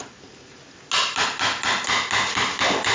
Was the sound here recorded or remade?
recorded